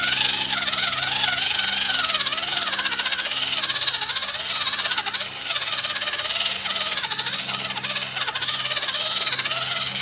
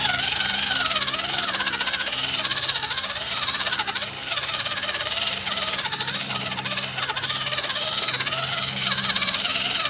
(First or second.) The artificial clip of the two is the second